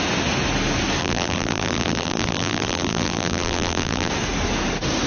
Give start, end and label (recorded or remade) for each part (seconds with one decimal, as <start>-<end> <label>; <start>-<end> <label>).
0.0-1.0 recorded; 1.0-4.1 remade; 4.1-5.1 recorded